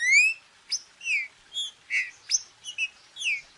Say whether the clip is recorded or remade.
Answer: recorded